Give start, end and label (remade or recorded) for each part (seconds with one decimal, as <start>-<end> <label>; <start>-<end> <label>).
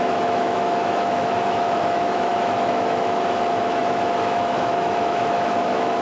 0.0-6.0 remade